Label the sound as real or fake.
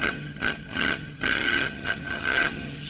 fake